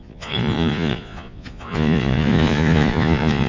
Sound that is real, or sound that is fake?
fake